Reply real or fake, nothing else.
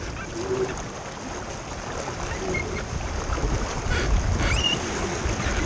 real